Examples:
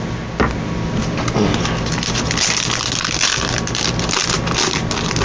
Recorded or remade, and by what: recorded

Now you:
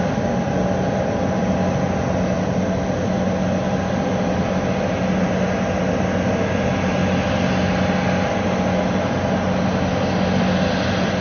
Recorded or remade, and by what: recorded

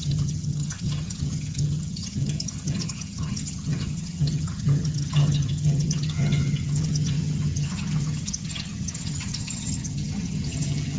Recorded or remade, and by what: remade, vocoder, HiFi-GAN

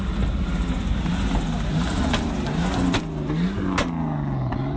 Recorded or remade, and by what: recorded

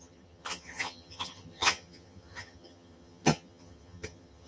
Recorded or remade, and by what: remade, vocoder, HiFi-GAN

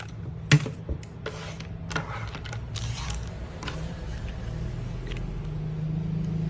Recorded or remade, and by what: recorded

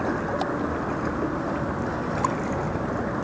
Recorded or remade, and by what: recorded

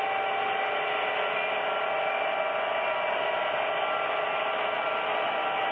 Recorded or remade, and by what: recorded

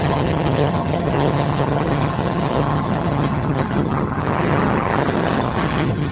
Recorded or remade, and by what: remade, vocoder, HiFi-GAN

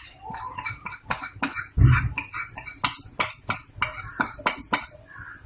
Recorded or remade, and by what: recorded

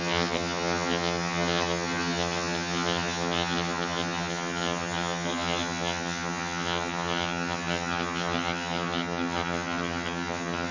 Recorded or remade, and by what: remade, vocoder, HiFi-GAN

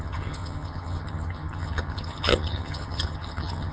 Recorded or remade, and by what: remade, vocoder, HiFi-GAN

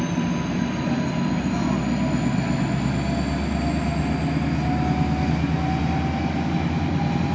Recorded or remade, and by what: recorded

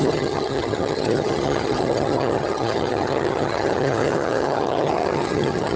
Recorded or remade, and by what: remade, vocoder, HiFi-GAN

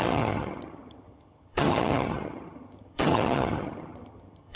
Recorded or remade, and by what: remade, vocoder, HiFi-GAN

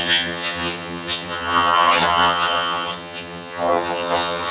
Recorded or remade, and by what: remade, vocoder, HiFi-GAN